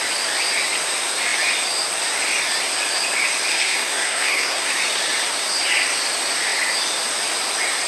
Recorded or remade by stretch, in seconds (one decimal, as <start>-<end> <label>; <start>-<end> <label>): 0.0-3.5 recorded; 3.5-4.7 remade; 4.7-7.9 recorded